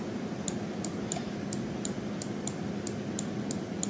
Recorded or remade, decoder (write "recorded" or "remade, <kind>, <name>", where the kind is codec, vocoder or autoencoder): recorded